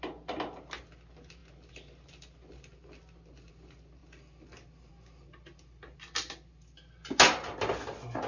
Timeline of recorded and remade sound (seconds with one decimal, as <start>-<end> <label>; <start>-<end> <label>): 0.0-8.3 recorded